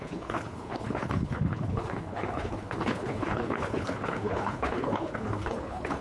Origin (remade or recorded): remade